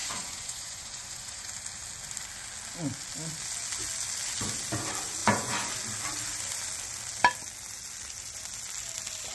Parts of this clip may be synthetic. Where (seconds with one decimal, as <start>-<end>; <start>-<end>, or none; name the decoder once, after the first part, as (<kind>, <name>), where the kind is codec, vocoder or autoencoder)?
0.0-1.5 (vocoder, Vocos); 5.2-5.7